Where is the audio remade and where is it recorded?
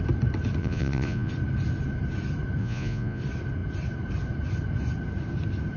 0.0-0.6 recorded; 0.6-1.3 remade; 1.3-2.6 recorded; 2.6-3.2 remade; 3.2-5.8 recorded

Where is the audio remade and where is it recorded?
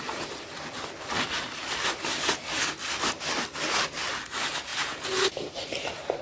0.0-4.7 recorded; 4.7-5.5 remade; 5.5-6.2 recorded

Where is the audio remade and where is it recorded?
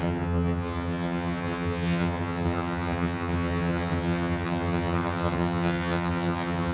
0.0-6.7 remade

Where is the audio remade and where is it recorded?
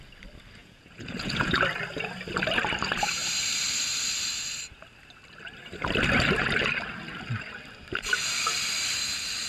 0.0-0.6 recorded; 0.6-1.5 remade; 1.5-9.5 recorded